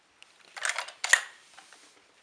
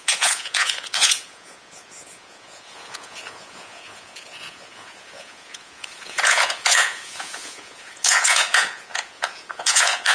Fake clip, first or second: second